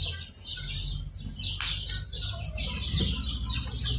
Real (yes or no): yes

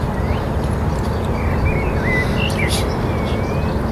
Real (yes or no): yes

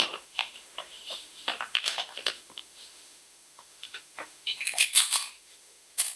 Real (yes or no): no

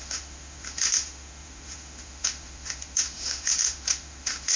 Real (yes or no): no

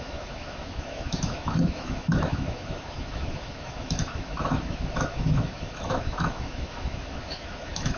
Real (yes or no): no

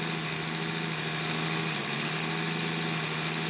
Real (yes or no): yes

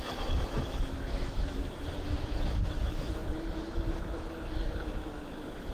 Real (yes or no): no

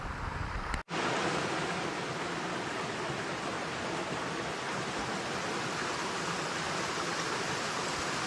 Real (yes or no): yes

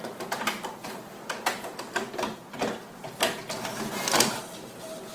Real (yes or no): yes